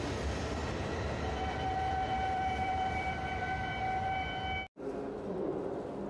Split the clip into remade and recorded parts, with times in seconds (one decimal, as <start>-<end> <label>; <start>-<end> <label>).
0.0-0.6 recorded; 0.6-4.3 remade; 4.3-6.1 recorded